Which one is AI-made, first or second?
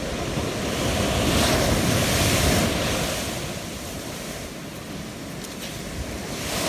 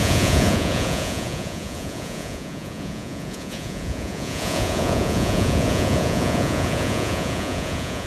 second